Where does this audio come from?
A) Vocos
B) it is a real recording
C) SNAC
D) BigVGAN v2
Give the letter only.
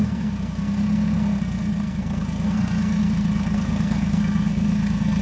C